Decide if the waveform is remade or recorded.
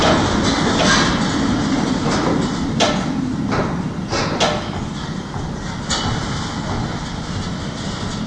recorded